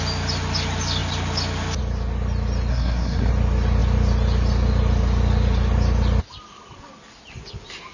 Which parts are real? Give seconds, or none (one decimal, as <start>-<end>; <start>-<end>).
0.0-2.7; 3.3-7.9

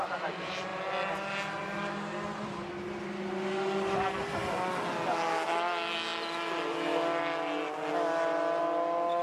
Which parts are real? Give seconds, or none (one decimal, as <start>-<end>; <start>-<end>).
0.0-9.2

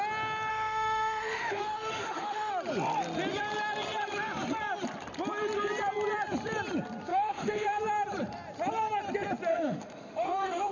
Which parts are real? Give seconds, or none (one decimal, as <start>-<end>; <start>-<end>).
0.0-0.5; 2.5-7.1; 7.8-9.5